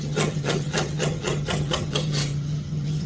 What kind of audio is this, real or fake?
fake